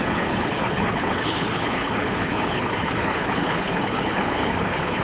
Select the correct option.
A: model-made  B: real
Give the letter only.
A